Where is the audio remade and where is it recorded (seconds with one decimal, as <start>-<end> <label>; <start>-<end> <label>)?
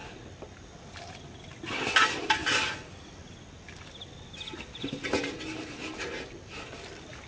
0.0-7.3 recorded